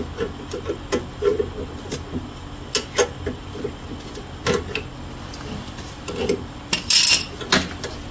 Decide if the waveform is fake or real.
real